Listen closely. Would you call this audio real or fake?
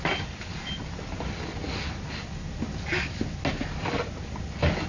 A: real